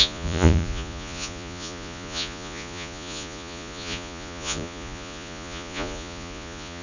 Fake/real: fake